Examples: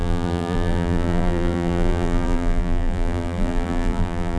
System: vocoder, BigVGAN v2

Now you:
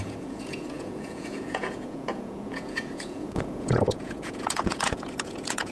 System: vocoder, Vocos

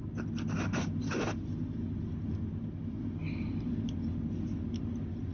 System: none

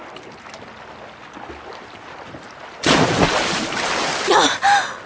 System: none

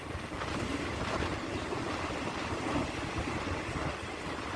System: none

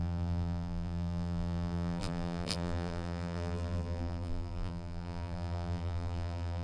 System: vocoder, BigVGAN v2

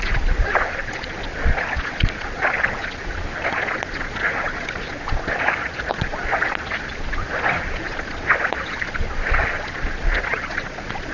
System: vocoder, Vocos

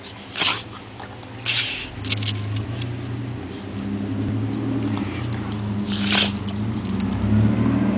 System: none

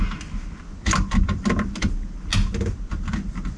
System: none